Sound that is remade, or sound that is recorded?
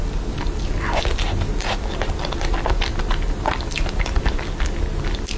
recorded